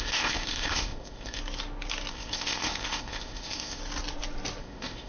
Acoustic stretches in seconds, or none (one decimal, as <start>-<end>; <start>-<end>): 1.4-2.1; 3.8-4.6